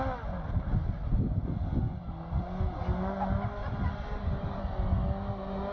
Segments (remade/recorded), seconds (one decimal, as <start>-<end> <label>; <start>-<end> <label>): 0.0-3.6 recorded; 3.6-4.6 remade; 4.6-5.7 recorded